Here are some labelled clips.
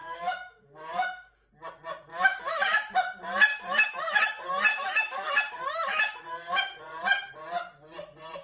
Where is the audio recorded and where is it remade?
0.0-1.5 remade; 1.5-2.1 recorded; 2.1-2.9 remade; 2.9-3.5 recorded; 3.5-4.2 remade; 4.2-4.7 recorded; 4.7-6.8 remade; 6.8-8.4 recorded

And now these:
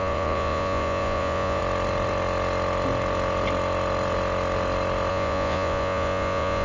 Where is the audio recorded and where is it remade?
0.0-1.6 remade; 1.6-5.1 recorded; 5.1-6.6 remade

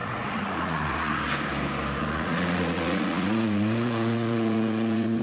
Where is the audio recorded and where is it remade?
0.0-1.2 remade; 1.2-2.0 recorded; 2.0-5.2 remade

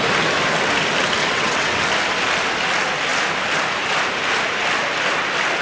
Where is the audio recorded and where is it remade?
0.0-1.2 recorded; 1.2-1.8 remade; 1.8-5.6 recorded

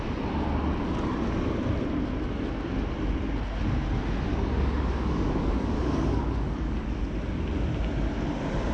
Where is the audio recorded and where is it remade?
0.0-4.3 recorded; 4.3-7.0 remade; 7.0-8.7 recorded

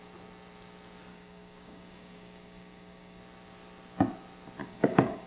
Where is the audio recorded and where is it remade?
0.0-1.1 recorded; 1.1-3.2 remade; 3.2-4.6 recorded; 4.6-5.3 remade